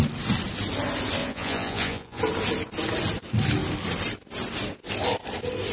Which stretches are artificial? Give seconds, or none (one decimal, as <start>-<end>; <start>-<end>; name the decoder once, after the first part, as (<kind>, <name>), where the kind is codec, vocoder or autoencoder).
1.2-2.2 (vocoder, Vocos)

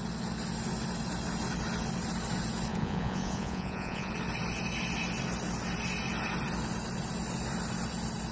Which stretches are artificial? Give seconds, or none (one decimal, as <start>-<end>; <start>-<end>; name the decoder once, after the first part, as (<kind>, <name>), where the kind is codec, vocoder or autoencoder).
2.7-4.1 (vocoder, Vocos)

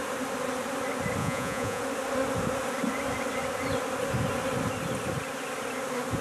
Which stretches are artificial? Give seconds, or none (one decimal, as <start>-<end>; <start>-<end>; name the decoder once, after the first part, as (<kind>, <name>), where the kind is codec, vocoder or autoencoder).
1.2-1.8 (vocoder, Vocos)

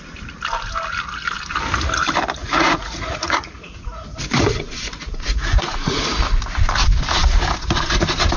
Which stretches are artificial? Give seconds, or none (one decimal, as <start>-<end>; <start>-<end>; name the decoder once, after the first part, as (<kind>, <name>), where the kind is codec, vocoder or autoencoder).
2.4-6.2 (vocoder, Vocos)